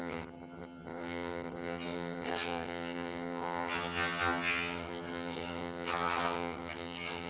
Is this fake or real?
fake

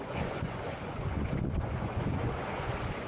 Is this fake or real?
fake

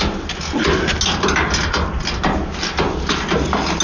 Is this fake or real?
real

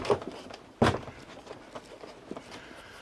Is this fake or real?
real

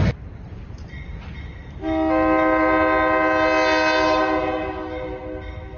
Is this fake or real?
real